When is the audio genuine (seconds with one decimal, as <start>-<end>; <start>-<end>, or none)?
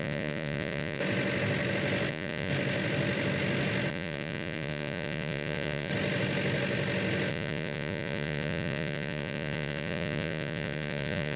1.0-2.1; 2.5-3.9; 5.9-7.3